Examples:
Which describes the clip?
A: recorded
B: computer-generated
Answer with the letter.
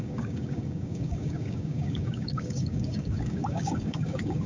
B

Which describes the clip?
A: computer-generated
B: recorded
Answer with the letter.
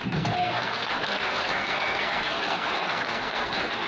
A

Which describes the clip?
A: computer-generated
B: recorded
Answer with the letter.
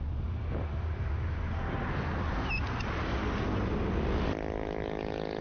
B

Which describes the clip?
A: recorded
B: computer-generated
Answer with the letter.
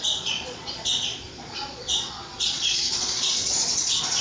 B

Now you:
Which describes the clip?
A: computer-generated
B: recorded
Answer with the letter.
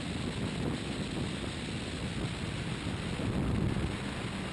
B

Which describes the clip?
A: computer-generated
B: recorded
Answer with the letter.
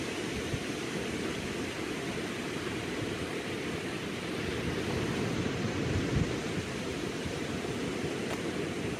A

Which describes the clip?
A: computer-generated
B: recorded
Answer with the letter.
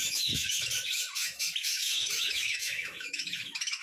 A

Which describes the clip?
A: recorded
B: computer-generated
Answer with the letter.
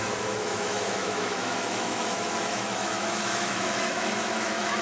B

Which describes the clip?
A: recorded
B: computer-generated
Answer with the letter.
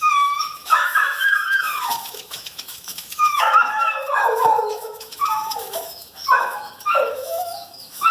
B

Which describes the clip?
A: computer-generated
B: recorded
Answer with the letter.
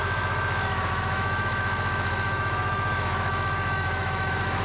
A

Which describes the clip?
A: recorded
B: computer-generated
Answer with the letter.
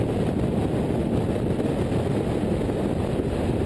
A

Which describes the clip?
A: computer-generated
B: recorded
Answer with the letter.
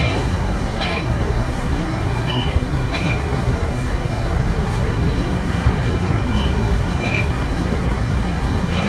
A